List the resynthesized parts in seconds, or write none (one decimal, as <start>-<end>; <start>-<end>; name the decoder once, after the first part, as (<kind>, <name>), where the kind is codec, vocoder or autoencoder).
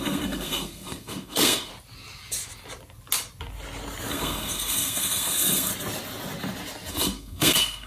0.0-1.7 (codec, SNAC); 4.1-5.7; 6.9-7.9